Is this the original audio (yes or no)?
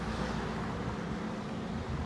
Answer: yes